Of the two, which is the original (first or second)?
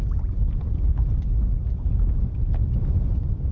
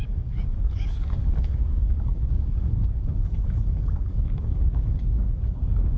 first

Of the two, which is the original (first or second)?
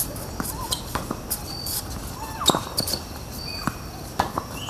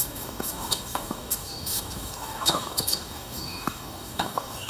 first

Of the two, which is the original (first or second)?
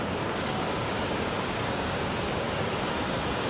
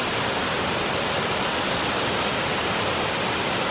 second